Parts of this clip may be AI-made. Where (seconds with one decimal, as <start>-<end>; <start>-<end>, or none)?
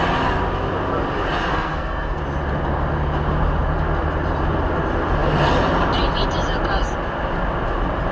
1.5-2.2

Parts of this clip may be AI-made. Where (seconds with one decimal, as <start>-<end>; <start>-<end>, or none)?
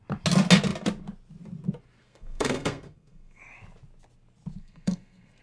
2.0-3.4; 4.6-5.4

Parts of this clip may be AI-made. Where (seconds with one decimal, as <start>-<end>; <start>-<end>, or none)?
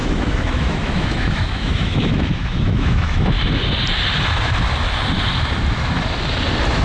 0.0-3.4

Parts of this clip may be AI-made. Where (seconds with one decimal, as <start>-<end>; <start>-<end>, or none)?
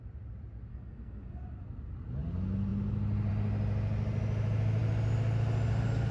0.7-1.4